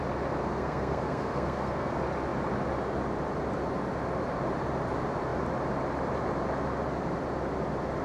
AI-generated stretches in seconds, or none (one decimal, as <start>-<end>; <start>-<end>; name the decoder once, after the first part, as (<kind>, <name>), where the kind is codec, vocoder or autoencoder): 0.4-1.9 (codec, SNAC)